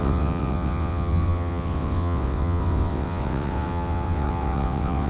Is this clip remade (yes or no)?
yes